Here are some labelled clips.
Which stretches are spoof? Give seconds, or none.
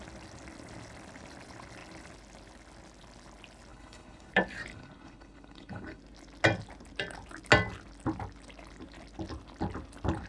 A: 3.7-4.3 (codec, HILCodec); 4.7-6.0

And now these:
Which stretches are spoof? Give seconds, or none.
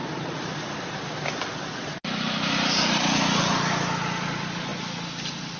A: none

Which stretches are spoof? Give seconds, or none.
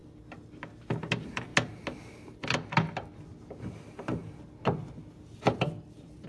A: none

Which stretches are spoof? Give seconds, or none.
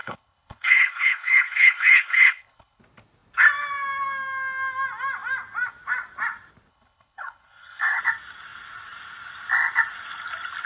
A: 0.0-2.8 (codec, HILCodec); 6.7-8.0